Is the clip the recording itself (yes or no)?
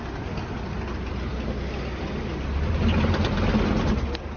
yes